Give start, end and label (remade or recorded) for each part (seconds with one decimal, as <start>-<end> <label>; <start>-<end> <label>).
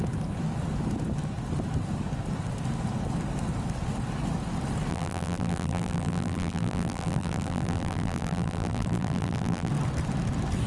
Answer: 0.0-4.9 recorded; 4.9-9.7 remade; 9.7-10.7 recorded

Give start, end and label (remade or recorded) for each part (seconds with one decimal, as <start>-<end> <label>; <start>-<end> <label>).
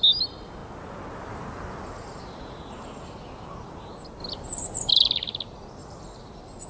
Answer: 0.0-5.8 recorded; 5.8-6.7 remade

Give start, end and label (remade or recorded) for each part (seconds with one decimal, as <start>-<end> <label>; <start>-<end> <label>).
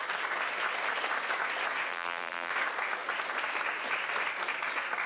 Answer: 0.0-1.9 recorded; 1.9-2.5 remade; 2.5-5.1 recorded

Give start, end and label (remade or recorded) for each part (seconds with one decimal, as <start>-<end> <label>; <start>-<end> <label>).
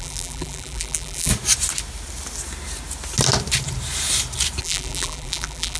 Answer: 0.0-1.3 remade; 1.3-4.6 recorded; 4.6-5.8 remade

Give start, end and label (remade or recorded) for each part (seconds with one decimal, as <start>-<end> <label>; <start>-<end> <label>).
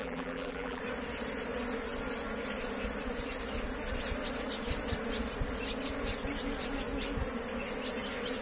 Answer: 0.0-0.8 remade; 0.8-8.4 recorded